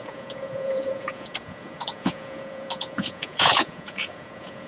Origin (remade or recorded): remade